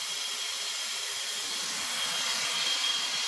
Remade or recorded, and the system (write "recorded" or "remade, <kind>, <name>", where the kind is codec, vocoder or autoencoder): recorded